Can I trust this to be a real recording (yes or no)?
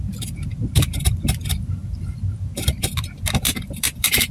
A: no